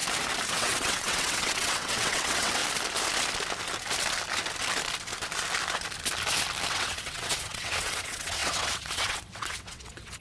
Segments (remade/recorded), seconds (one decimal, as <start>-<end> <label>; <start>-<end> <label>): 0.0-0.5 recorded; 0.5-2.6 remade; 2.6-6.7 recorded; 6.7-10.2 remade